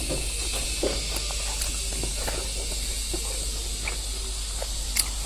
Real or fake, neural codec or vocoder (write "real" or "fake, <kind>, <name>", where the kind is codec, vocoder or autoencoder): real